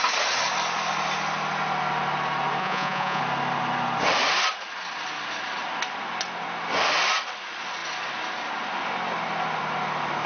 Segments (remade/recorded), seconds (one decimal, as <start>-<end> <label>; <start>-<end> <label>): 0.0-2.6 recorded; 2.6-3.2 remade; 3.2-10.3 recorded